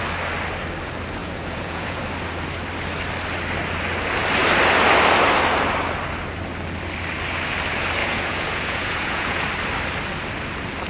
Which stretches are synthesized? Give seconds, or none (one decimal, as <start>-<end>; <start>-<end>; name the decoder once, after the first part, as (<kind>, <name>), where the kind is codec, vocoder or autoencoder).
1.2-2.0 (vocoder, Vocos); 8.0-9.5